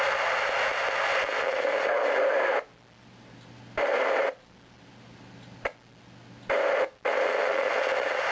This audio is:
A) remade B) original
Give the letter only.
B